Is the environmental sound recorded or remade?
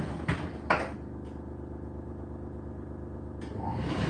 recorded